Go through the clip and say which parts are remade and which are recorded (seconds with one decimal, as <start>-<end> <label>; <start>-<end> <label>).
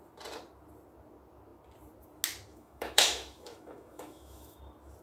0.0-2.5 recorded; 2.5-4.6 remade; 4.6-5.0 recorded